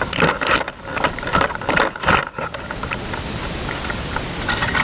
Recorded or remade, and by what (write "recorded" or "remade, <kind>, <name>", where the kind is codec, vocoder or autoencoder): recorded